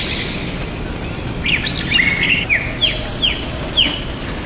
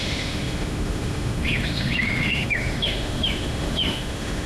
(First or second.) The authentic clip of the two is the first